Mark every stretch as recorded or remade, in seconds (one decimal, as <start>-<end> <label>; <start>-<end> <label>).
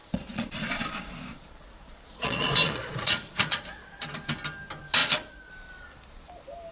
0.0-4.0 remade; 4.0-5.0 recorded; 5.0-5.5 remade; 5.5-6.7 recorded